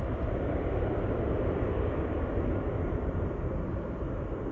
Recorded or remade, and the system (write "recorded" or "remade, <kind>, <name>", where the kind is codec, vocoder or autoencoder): recorded